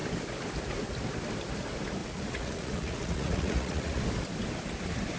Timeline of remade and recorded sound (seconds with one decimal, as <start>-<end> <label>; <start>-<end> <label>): 0.0-2.0 recorded; 2.0-4.0 remade; 4.0-5.2 recorded